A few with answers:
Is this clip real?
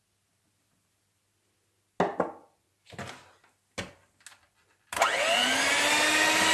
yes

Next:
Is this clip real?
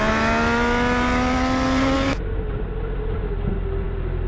yes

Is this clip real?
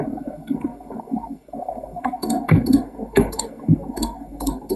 no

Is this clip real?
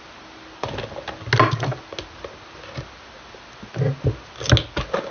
yes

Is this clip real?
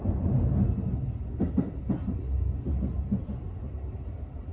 yes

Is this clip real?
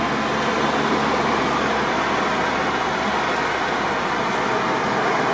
yes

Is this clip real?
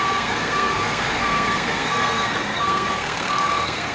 no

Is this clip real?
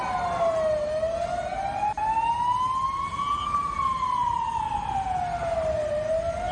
yes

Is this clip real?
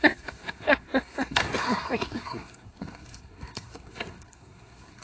no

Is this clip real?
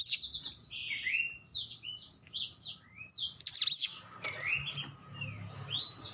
yes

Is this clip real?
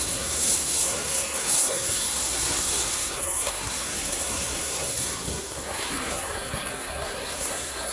no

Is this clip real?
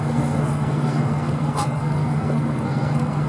no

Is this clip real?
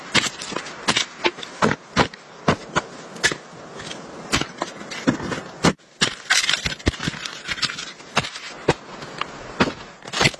yes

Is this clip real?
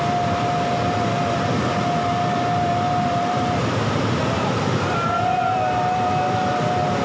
yes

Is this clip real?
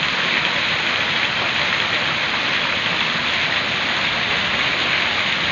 yes